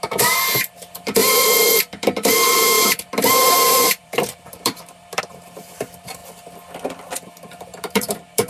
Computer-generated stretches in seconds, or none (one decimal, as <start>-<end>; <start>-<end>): 0.0-6.2; 7.1-8.5